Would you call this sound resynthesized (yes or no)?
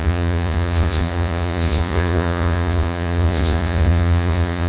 yes